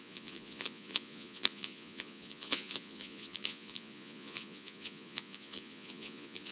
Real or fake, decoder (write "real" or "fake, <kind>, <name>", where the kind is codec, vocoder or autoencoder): fake, vocoder, Vocos